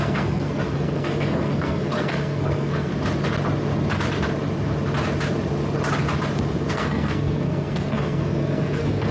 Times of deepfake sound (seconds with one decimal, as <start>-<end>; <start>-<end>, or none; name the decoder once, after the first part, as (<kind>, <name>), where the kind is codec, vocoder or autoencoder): 0.0-2.9 (codec, SNAC); 6.7-9.1